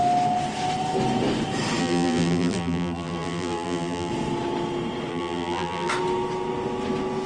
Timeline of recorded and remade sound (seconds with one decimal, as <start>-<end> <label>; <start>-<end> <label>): 0.0-1.8 recorded; 1.8-4.1 remade; 4.1-5.1 recorded; 5.1-5.9 remade; 5.9-7.3 recorded